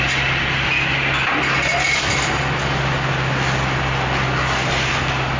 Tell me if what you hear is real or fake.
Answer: real